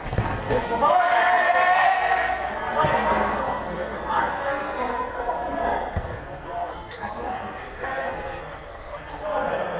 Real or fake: fake